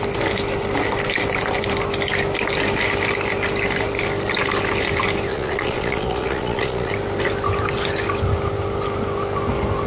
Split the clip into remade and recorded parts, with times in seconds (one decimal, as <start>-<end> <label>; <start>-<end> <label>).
0.0-5.3 recorded; 5.3-6.9 remade; 6.9-9.9 recorded